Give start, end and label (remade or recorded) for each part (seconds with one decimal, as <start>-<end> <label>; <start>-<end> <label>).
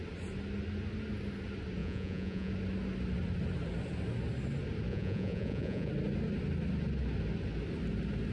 0.0-1.8 recorded; 1.8-2.5 remade; 2.5-4.9 recorded; 4.9-5.9 remade; 5.9-8.3 recorded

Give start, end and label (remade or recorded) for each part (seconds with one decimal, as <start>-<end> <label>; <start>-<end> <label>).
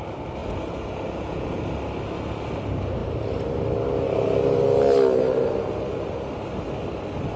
0.0-0.4 recorded; 0.4-1.6 remade; 1.6-7.4 recorded